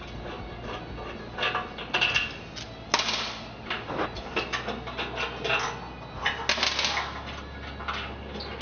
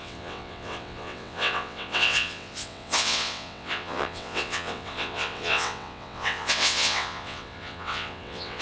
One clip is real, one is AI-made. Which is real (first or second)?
first